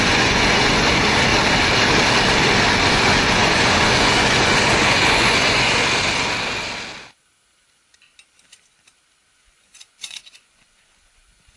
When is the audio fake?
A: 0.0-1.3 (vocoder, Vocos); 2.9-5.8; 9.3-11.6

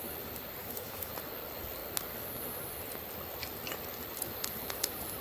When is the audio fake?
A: 0.6-1.1 (autoencoder, DAC-VAE)

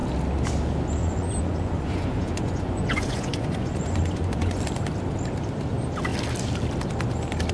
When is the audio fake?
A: 1.0-4.6 (vocoder, Vocos)

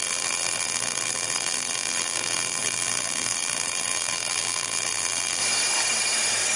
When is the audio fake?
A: 0.0-5.4 (vocoder, BigVGAN v2)

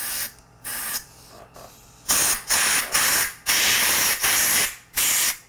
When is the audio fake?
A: 0.7-2.2 (vocoder, BigVGAN v2); 3.1-4.6

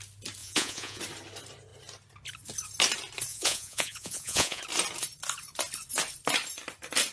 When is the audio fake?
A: 0.4-1.0 (vocoder, Vocos); 3.3-4.6